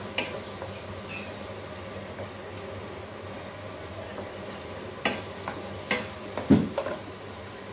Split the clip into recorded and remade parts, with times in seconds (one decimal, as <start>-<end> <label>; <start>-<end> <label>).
0.0-7.7 recorded